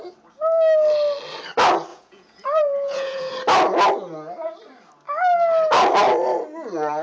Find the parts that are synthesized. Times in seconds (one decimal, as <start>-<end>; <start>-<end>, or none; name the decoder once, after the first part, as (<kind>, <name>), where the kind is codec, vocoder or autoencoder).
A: 1.9-3.3 (vocoder, Vocos)